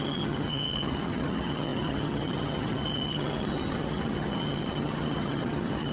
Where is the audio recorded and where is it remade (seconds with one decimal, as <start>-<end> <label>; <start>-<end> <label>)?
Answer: 0.0-5.9 remade